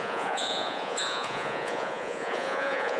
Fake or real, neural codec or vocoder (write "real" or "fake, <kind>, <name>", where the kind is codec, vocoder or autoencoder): fake, vocoder, Vocos